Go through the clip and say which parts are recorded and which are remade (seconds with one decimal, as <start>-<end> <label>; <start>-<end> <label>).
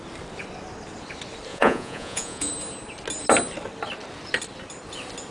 0.0-1.5 recorded; 1.5-2.5 remade; 2.5-5.3 recorded